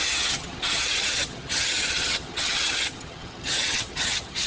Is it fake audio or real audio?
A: fake